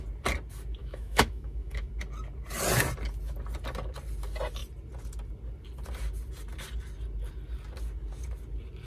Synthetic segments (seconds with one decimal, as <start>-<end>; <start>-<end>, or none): 0.8-1.9